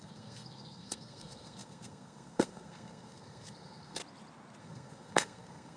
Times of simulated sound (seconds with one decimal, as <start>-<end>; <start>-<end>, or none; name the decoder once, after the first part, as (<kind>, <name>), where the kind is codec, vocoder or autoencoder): 0.0-4.0 (codec, SNAC); 4.6-5.8